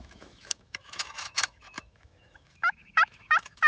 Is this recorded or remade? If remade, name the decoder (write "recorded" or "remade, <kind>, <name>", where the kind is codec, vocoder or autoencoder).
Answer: remade, autoencoder, DAC-VAE